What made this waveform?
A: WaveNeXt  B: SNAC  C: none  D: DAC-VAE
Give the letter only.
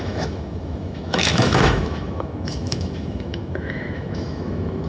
D